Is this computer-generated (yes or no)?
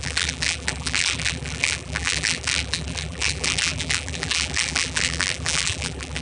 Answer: yes